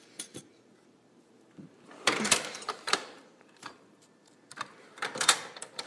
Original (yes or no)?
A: no